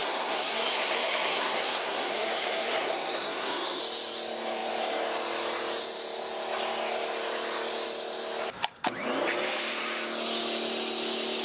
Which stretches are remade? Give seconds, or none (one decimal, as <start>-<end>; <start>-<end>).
0.0-3.8